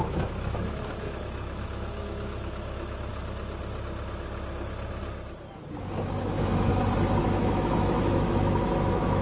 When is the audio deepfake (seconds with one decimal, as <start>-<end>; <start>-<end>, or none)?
0.0-3.1; 6.2-6.7; 7.2-9.2